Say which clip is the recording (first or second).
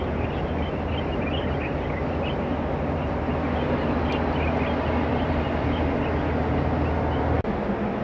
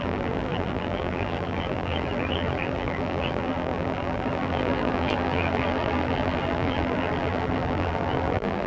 first